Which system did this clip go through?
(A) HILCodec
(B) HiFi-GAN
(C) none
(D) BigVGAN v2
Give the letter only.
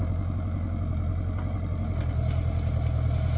C